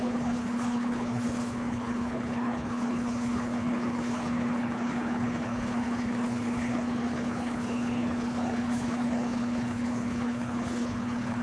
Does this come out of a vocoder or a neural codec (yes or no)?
yes